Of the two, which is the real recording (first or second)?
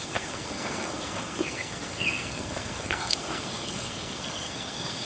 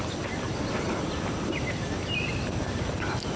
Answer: second